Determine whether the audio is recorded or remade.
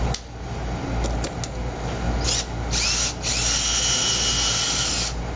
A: recorded